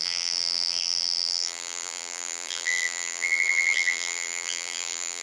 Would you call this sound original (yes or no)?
no